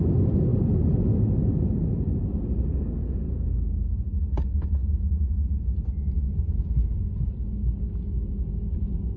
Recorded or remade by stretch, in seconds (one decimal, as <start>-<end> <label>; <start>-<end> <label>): 0.0-9.2 recorded